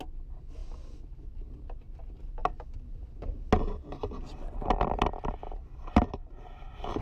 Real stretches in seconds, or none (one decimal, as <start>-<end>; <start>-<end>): 0.0-7.0